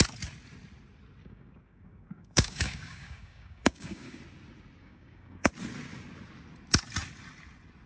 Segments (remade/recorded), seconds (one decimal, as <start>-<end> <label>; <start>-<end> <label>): 0.0-1.2 recorded; 1.2-4.2 remade; 4.2-4.8 recorded; 4.8-5.5 remade; 5.5-7.9 recorded